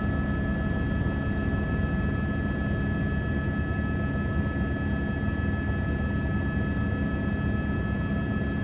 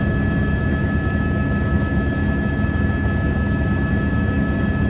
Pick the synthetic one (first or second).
second